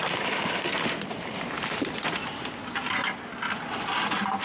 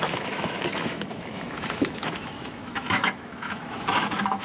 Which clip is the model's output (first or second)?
second